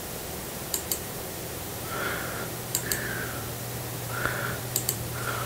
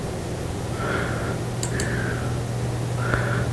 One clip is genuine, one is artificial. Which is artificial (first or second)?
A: first